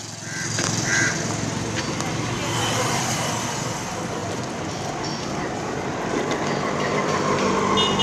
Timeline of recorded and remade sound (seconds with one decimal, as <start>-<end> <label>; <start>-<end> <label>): 0.0-8.0 recorded